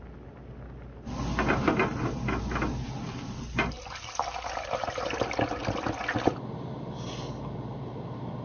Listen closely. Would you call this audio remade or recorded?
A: recorded